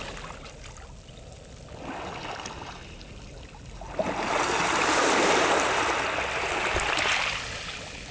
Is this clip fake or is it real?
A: real